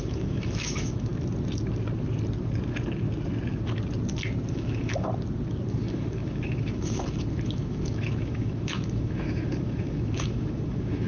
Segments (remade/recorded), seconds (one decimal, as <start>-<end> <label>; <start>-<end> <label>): 0.0-1.1 remade; 1.1-4.5 recorded; 4.5-5.1 remade; 5.1-5.7 recorded; 5.7-11.1 remade